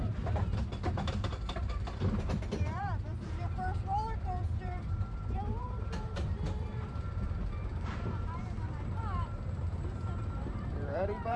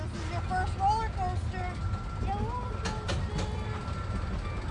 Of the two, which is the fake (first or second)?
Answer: first